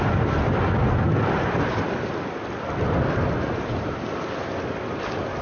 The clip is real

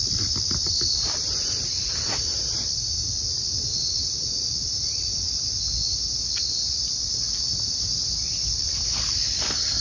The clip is real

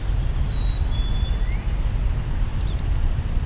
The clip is real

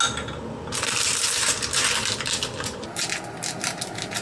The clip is real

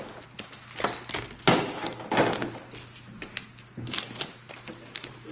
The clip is real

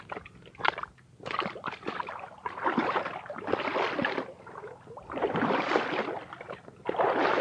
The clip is real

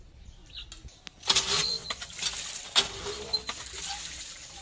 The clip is real